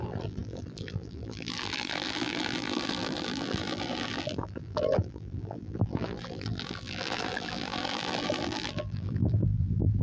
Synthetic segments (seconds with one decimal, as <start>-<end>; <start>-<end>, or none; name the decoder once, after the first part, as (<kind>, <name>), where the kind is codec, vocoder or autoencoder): 0.0-10.0 (vocoder, BigVGAN v2)